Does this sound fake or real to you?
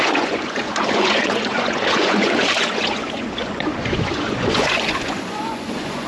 fake